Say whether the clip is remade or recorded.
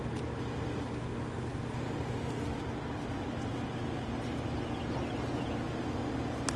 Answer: recorded